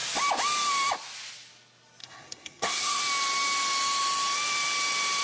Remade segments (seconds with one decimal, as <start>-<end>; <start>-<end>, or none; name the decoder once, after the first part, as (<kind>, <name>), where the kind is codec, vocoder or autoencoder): 2.0-3.0 (codec, SNAC)